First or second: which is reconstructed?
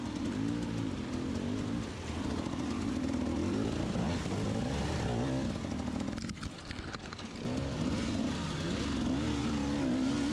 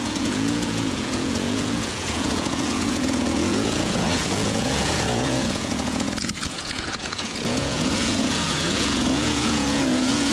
second